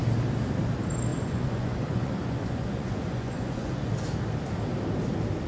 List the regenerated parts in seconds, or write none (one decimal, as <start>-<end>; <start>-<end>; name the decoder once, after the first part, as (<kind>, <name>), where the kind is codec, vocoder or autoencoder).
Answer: 1.1-3.9 (vocoder, Vocos)